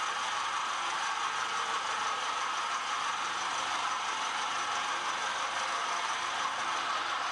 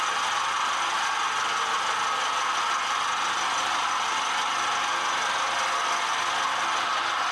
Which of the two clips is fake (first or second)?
first